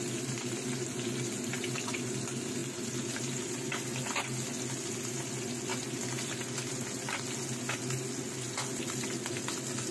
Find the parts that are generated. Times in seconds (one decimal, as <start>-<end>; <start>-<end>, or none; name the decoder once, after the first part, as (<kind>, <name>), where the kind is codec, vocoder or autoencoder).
none